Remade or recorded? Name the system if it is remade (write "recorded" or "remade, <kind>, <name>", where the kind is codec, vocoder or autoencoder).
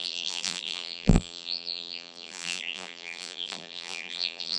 remade, vocoder, BigVGAN v2